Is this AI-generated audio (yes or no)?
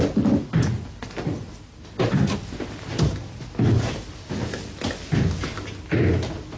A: no